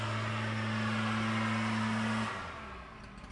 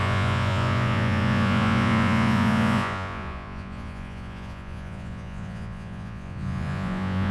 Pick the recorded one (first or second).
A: first